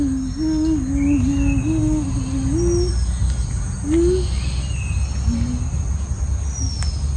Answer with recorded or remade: recorded